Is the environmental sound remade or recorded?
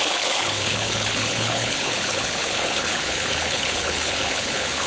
remade